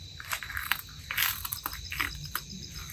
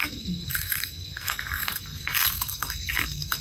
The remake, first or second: second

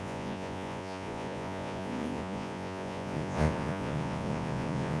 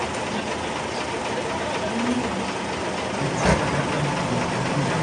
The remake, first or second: first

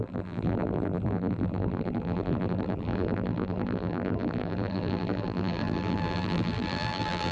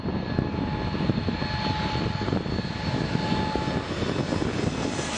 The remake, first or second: first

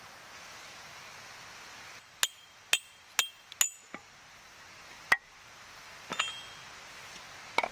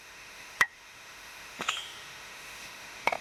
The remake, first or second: second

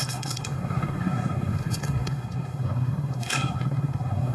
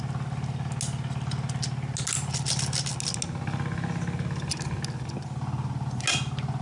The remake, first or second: first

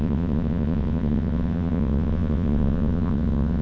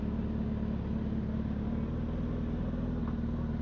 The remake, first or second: first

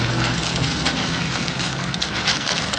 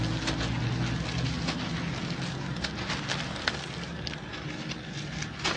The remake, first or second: first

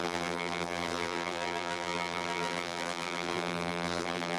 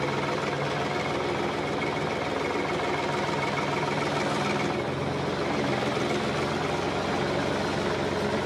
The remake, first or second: first